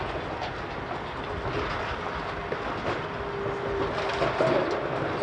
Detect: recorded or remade recorded